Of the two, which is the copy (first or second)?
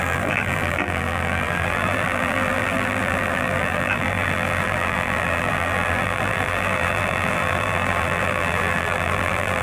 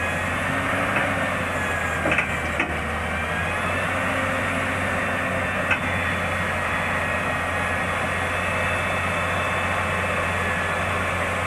first